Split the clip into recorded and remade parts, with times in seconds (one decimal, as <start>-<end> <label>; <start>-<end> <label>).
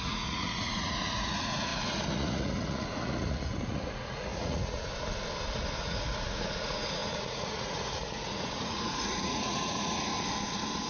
0.0-4.9 remade; 4.9-5.8 recorded; 5.8-10.1 remade; 10.1-10.9 recorded